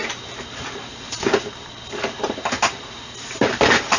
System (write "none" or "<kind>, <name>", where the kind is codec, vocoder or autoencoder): vocoder, BigVGAN v2